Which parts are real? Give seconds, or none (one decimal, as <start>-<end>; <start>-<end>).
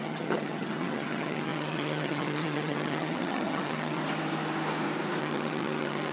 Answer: 4.0-5.2